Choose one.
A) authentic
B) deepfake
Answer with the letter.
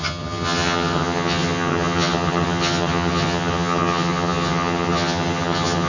B